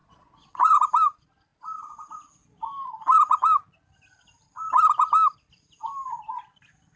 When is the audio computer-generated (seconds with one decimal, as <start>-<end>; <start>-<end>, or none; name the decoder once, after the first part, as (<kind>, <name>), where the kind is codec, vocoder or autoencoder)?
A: 0.0-0.8 (vocoder, Vocos)